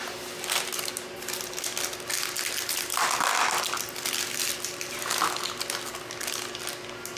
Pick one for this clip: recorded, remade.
recorded